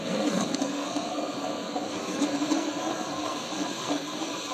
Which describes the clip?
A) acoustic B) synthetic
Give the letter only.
B